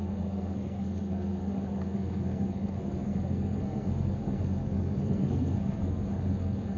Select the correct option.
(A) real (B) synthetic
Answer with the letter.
B